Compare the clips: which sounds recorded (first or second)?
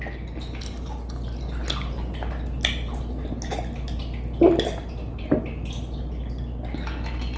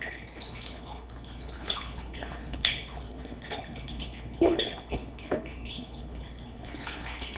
first